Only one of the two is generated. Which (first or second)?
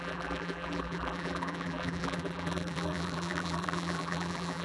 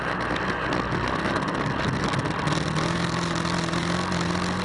first